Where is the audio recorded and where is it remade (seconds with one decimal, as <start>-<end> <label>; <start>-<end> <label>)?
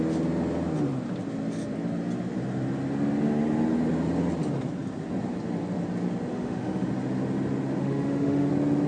0.0-6.3 recorded; 6.3-6.9 remade; 6.9-7.8 recorded; 7.8-8.5 remade; 8.5-8.9 recorded